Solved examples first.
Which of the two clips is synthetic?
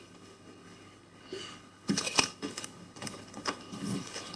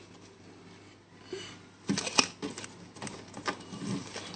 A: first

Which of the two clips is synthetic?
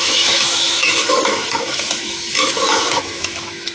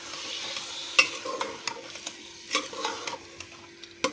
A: first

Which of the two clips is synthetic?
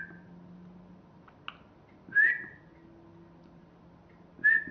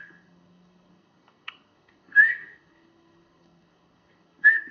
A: second